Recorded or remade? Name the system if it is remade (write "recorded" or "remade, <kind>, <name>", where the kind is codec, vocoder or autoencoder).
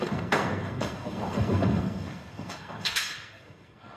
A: remade, codec, SNAC